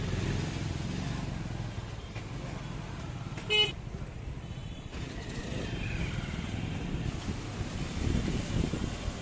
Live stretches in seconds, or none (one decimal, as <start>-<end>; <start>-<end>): 0.0-4.6; 5.4-9.2